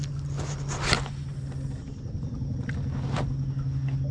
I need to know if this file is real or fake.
real